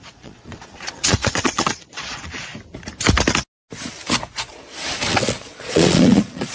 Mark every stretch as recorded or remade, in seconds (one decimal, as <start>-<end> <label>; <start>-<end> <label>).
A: 0.0-2.5 remade; 2.5-5.1 recorded; 5.1-6.5 remade